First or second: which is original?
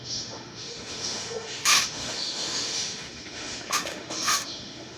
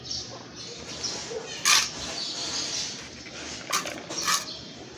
second